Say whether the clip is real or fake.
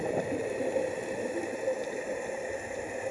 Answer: real